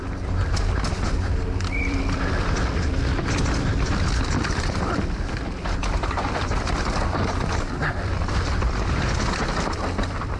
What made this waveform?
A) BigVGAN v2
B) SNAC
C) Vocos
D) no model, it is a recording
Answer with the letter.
A